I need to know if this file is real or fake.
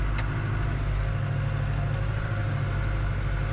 real